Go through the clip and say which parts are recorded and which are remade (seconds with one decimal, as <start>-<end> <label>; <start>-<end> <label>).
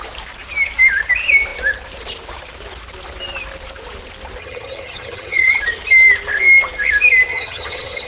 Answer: 0.0-4.4 recorded; 4.4-5.6 remade; 5.6-7.3 recorded; 7.3-8.1 remade